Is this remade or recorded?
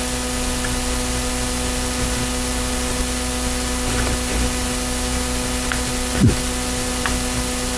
recorded